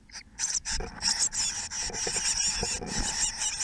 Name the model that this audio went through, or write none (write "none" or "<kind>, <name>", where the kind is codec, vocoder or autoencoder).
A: none